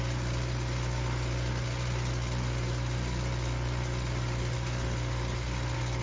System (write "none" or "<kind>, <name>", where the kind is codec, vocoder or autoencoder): none